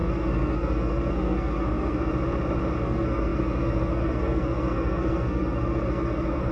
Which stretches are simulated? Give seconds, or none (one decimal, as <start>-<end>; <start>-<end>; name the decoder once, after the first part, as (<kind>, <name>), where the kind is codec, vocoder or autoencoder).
0.0-2.1 (codec, SNAC); 2.8-6.5